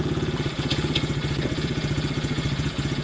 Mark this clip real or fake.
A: fake